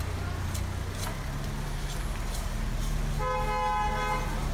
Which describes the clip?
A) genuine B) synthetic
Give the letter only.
A